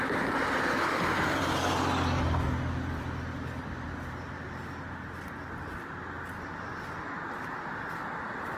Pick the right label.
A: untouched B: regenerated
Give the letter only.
A